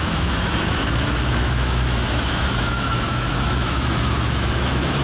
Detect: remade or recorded remade